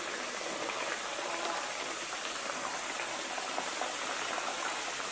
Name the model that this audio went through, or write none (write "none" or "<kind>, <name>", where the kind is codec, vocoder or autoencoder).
none